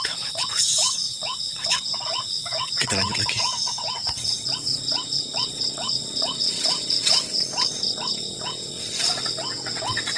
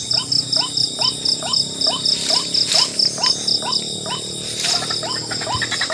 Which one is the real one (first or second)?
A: second